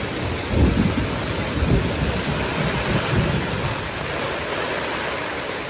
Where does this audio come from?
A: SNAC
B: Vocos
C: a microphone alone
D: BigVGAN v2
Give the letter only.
C